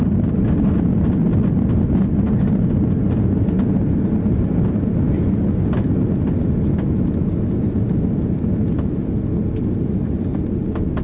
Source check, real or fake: real